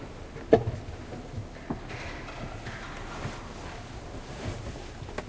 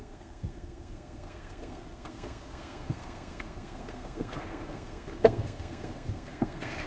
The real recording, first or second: first